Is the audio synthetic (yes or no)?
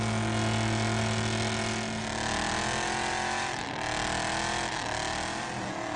no